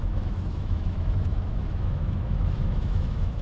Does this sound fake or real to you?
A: fake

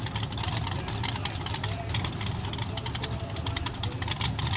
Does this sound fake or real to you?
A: real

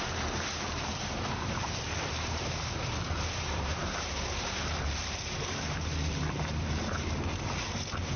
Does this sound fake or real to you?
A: fake